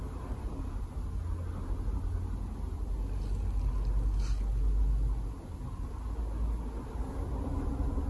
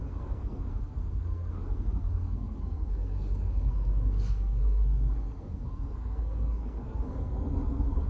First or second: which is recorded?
first